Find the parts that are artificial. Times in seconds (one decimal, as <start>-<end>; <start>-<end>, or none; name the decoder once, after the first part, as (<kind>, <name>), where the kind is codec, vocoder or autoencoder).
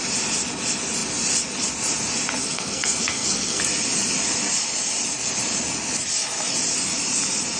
2.4-3.6 (codec, SNAC)